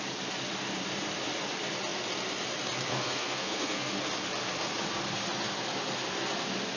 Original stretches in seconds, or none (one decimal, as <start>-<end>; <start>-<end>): 0.0-2.9; 3.9-6.8